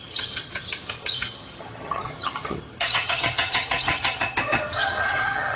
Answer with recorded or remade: remade